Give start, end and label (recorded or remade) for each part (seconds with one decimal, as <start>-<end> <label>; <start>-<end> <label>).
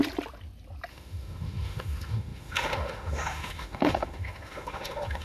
0.0-0.9 recorded; 0.9-5.2 remade